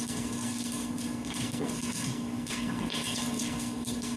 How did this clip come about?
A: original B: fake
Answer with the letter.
B